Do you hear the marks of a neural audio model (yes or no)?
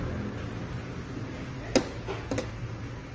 no